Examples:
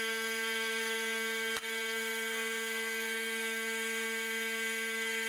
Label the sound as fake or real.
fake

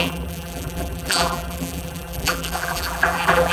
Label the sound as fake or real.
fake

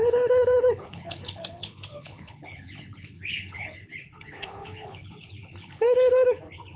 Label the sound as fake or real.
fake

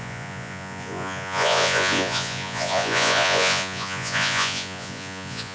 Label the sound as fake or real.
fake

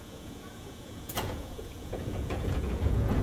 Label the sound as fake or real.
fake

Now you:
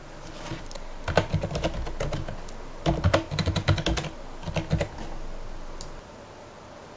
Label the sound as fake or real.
real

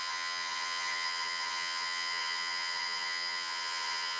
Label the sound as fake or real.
fake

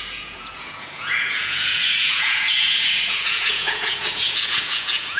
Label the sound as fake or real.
fake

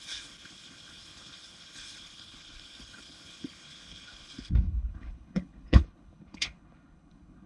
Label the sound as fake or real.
fake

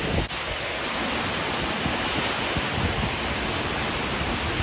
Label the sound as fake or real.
real